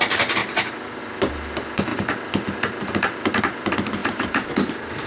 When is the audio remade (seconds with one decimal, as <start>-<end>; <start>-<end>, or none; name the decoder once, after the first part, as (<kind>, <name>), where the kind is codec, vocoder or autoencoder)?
4.0-4.5 (vocoder, BigVGAN v2)